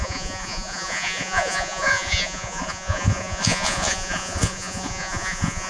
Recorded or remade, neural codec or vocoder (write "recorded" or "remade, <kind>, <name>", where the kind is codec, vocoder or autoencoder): remade, vocoder, Vocos